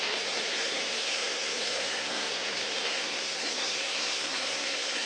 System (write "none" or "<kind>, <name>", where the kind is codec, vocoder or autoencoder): codec, SNAC